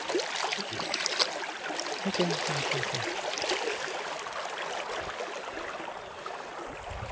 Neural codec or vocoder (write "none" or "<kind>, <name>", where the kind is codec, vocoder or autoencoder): none